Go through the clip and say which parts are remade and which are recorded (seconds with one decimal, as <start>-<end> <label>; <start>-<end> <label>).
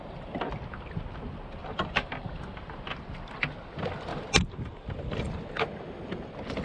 0.0-1.6 recorded; 1.6-2.1 remade; 2.1-6.6 recorded